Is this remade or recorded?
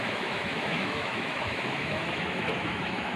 remade